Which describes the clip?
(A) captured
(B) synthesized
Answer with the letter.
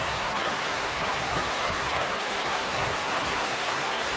B